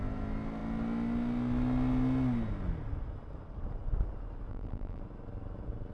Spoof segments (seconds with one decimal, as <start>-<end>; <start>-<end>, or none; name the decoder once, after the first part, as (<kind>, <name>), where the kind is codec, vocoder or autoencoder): 4.5-5.0 (vocoder, BigVGAN v2)